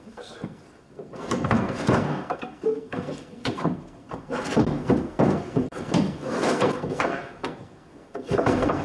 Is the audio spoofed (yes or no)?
yes